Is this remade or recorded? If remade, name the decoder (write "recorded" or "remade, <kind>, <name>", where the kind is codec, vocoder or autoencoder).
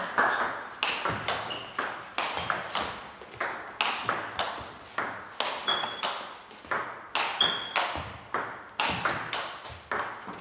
recorded